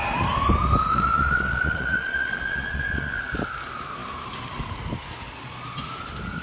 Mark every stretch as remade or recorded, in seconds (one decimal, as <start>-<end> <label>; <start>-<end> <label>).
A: 0.0-0.9 recorded; 0.9-3.2 remade; 3.2-6.4 recorded